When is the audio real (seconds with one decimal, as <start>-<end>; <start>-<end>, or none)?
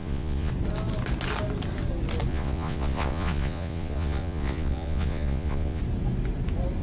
0.5-2.3; 5.8-6.8